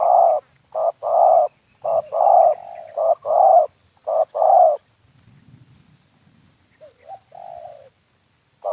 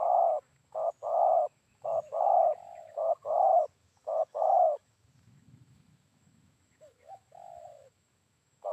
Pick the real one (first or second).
first